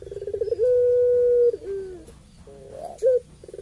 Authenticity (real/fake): real